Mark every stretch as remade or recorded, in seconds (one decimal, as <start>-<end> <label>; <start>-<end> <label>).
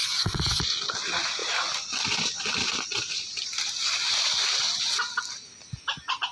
0.0-0.6 remade; 0.6-6.3 recorded